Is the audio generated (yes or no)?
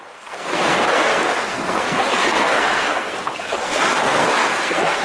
yes